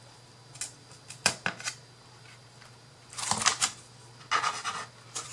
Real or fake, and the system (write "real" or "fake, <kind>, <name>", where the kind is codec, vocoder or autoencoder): real